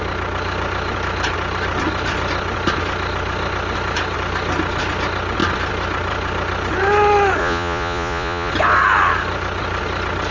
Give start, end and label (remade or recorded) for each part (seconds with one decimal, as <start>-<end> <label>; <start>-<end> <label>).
0.0-7.4 recorded; 7.4-8.5 remade; 8.5-10.3 recorded